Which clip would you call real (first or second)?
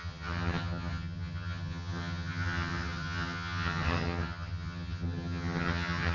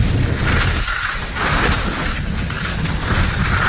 second